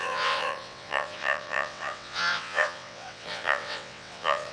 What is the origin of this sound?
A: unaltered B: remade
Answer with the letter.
B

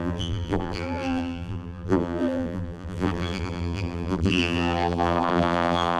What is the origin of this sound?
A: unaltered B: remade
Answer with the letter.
B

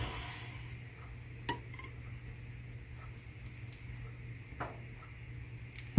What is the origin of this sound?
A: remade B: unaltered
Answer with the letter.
B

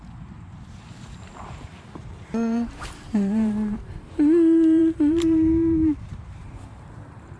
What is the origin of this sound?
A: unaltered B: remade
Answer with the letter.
B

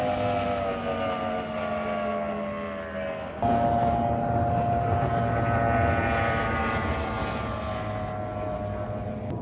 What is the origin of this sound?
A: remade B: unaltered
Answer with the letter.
B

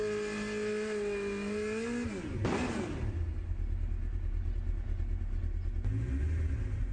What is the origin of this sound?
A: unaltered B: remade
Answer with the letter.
A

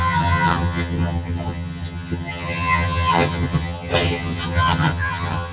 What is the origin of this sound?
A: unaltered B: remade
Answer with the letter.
B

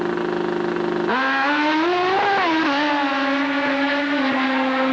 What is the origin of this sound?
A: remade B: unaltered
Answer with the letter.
B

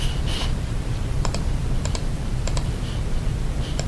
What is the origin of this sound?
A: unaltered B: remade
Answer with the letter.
B